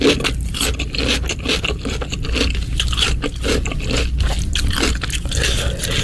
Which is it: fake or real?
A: real